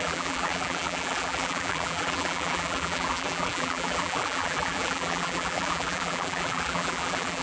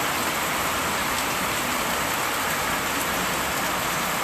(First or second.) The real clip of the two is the second